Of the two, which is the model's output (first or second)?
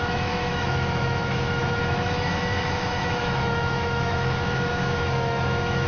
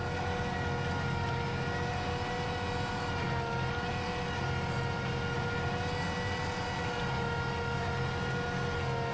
first